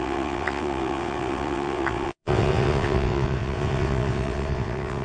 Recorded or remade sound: remade